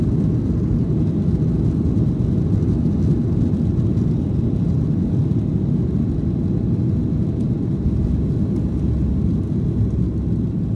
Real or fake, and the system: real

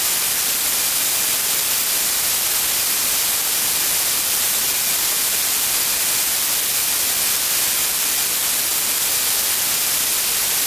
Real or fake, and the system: real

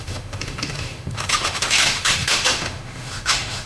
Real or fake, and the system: fake, autoencoder, DAC-VAE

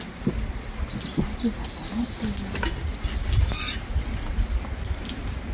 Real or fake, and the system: real